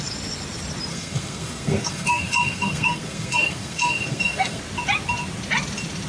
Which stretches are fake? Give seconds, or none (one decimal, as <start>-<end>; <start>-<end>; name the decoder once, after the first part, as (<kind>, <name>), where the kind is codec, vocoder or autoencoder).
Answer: 0.9-4.6 (codec, SNAC)

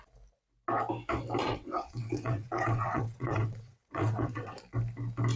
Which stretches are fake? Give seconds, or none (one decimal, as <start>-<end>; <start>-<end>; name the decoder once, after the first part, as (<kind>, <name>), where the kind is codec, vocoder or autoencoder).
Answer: 1.4-4.6 (vocoder, WaveNeXt)

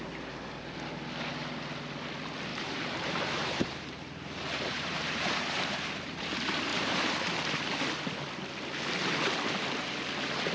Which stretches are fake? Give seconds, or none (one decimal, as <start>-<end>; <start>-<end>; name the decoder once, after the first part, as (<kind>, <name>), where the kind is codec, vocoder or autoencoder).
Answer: 2.5-6.3 (vocoder, BigVGAN v2); 6.7-7.6

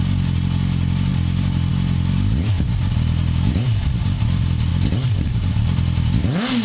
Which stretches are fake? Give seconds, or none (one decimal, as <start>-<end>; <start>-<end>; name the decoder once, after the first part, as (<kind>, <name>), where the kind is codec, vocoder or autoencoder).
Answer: 4.7-5.5 (vocoder, BigVGAN v2)

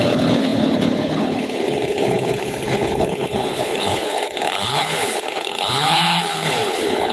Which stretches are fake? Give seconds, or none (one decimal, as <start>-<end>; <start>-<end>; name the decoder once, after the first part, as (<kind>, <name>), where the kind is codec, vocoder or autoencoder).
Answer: 0.0-7.1 (codec, HILCodec)

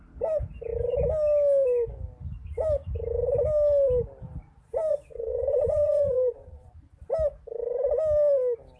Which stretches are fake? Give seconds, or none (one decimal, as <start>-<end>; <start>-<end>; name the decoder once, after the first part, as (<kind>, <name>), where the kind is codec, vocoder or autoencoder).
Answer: 4.9-6.7 (vocoder, Vocos)